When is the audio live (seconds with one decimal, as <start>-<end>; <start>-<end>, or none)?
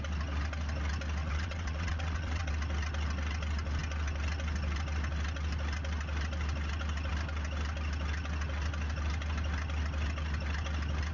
0.0-1.2; 2.5-11.1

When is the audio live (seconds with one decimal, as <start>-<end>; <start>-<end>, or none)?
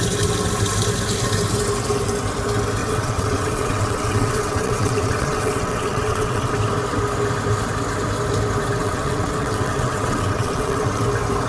0.0-2.8; 6.5-8.8; 11.0-11.5